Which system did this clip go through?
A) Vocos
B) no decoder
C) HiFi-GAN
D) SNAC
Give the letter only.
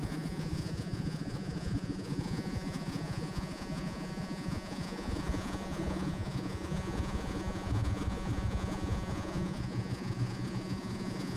A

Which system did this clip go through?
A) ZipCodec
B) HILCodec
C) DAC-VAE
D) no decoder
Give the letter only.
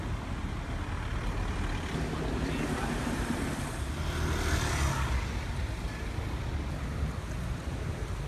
D